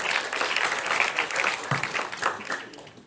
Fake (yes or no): no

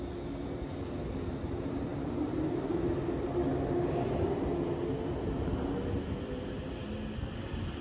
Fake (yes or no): no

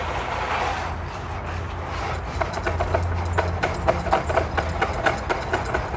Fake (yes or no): no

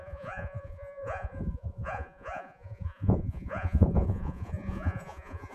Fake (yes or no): yes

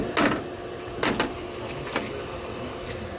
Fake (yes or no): no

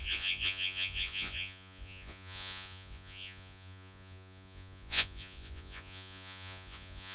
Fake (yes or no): yes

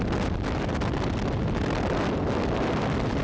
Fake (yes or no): no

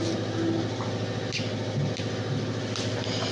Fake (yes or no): no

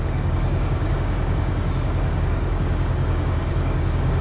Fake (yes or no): yes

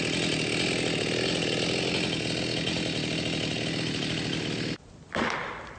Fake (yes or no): no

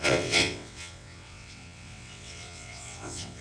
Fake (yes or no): yes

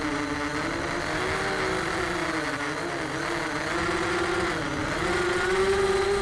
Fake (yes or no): no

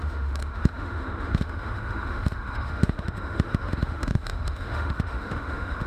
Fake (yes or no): yes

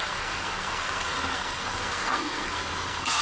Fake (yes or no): yes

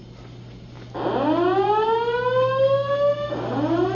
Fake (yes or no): no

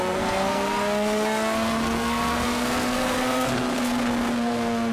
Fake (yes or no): yes